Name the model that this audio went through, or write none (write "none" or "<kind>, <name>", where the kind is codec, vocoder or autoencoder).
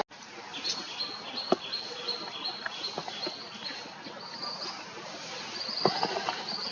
none